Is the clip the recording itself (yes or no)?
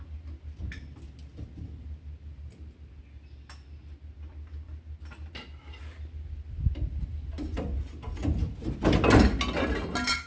yes